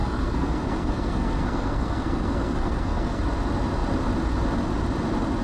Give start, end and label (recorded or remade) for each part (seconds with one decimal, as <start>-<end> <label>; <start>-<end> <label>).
0.0-3.2 remade; 3.2-5.4 recorded